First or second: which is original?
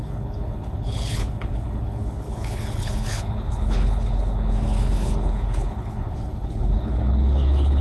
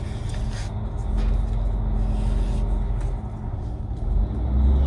second